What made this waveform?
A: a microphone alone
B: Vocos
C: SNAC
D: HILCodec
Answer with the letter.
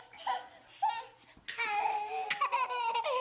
A